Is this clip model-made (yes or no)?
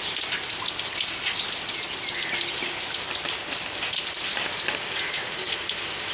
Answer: no